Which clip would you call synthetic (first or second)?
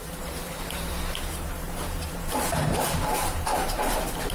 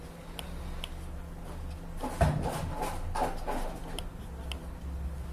first